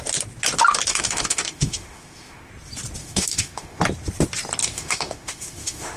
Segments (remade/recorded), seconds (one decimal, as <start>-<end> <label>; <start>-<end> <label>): 0.0-0.9 recorded; 0.9-2.5 remade; 2.5-3.0 recorded; 3.0-3.8 remade; 3.8-4.6 recorded; 4.6-6.0 remade

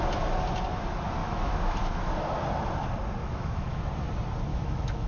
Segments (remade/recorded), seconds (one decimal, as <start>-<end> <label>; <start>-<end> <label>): 0.0-1.2 recorded; 1.2-2.1 remade; 2.1-3.2 recorded; 3.2-3.8 remade; 3.8-4.5 recorded; 4.5-5.1 remade

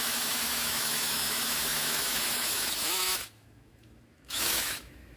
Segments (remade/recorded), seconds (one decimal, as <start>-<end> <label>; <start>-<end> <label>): 0.0-5.2 remade